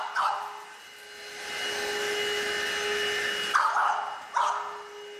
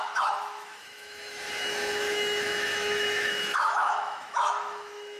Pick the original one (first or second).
first